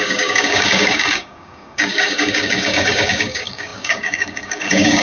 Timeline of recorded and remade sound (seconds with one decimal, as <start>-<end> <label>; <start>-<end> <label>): 0.0-5.0 remade